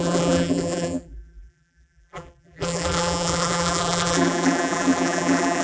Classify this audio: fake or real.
fake